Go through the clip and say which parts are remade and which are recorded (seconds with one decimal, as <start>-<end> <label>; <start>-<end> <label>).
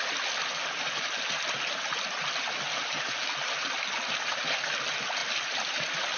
0.0-6.2 recorded